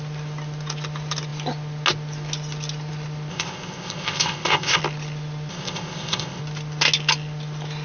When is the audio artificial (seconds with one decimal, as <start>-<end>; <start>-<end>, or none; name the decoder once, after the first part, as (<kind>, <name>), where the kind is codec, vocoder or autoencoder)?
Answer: 3.3-4.8 (codec, ZipCodec); 5.5-6.4